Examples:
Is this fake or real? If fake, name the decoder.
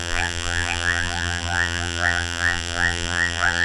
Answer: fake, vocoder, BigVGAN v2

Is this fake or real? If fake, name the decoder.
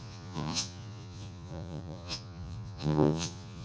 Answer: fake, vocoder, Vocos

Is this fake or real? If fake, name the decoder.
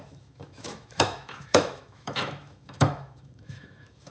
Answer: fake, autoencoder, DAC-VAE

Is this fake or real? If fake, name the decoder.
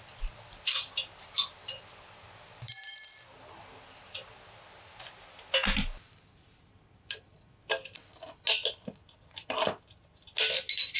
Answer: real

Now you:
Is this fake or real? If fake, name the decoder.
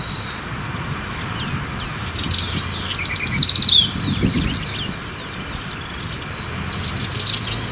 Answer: real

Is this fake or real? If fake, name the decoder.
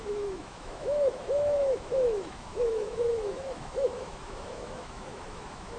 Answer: fake, autoencoder, DAC-VAE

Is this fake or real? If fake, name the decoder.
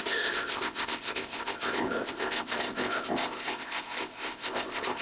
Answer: fake, codec, ZipCodec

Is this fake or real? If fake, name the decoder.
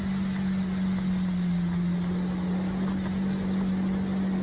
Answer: real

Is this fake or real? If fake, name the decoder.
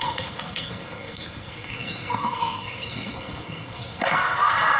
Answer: fake, codec, SNAC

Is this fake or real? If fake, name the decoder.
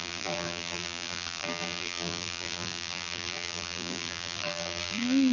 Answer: fake, vocoder, BigVGAN v2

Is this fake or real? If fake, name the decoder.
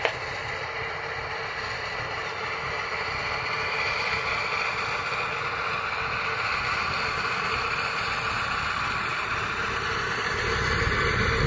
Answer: real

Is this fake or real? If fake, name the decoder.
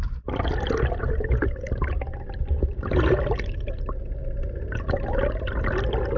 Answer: real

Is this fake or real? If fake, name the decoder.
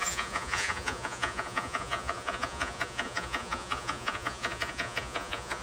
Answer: fake, vocoder, Vocos